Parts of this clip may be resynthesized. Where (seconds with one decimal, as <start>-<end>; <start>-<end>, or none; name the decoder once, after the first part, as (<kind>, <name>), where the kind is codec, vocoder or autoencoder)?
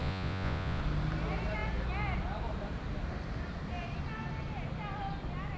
0.0-0.8 (vocoder, Vocos)